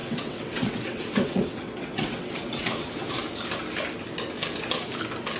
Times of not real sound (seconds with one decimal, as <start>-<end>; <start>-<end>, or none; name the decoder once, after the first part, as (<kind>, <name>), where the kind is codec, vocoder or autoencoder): 0.0-3.1 (vocoder, WaveNeXt)

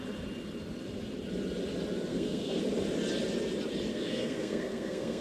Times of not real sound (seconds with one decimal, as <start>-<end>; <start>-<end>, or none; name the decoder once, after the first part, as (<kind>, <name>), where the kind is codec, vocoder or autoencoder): 2.1-2.6 (codec, SNAC); 3.9-5.2

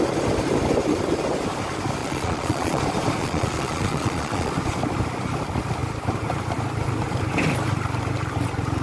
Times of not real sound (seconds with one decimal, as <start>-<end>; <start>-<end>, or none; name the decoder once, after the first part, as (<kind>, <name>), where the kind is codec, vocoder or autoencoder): 2.0-2.8 (vocoder, Vocos); 3.2-4.5

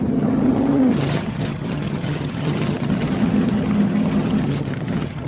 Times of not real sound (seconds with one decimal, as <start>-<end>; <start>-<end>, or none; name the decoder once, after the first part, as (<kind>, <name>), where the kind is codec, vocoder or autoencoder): 0.0-5.3 (vocoder, HiFi-GAN)

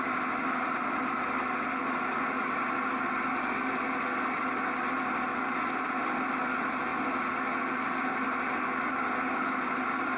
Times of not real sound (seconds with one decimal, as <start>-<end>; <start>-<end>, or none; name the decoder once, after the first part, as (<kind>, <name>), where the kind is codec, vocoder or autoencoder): none